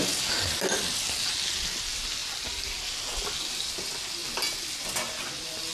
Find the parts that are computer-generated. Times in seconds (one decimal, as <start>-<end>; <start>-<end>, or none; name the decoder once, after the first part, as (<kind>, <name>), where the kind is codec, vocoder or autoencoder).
none